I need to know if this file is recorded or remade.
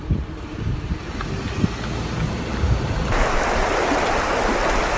recorded